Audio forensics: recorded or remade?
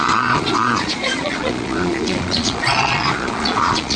remade